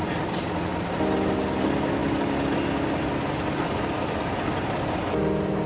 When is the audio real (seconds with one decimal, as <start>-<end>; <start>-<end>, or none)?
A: 0.0-5.7